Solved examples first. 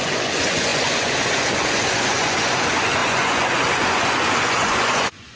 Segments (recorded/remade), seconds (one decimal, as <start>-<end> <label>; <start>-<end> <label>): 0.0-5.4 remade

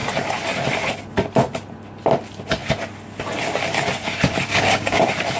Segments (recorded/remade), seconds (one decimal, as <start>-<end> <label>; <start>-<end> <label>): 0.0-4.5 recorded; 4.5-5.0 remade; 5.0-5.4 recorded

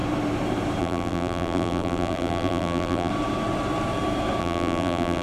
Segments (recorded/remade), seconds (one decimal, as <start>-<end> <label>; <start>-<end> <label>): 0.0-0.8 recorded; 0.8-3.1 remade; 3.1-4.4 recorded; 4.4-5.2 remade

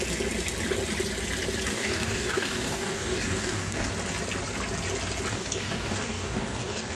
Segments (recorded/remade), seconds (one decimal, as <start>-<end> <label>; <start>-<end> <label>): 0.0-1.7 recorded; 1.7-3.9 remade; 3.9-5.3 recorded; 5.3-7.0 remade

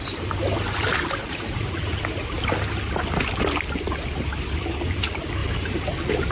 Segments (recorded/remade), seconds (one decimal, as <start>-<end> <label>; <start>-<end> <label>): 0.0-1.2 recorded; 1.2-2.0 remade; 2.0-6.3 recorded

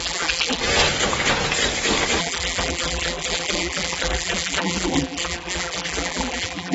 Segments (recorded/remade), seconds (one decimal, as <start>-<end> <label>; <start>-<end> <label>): 0.0-0.6 remade; 0.6-2.2 recorded; 2.2-6.7 remade

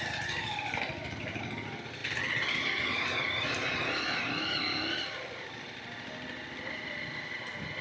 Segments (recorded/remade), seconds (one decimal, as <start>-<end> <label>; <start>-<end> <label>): 0.0-7.8 recorded

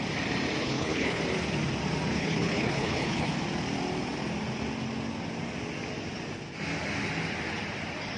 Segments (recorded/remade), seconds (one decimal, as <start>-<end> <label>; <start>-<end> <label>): 0.0-0.6 recorded; 0.6-1.2 remade; 1.2-2.1 recorded; 2.1-3.3 remade; 3.3-8.2 recorded